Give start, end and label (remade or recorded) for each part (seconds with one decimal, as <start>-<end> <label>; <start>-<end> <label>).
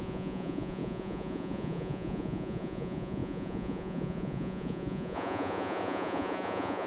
0.0-6.9 remade